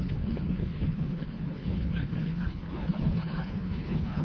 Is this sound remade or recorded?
remade